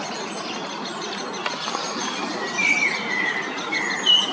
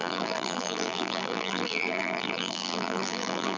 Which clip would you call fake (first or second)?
second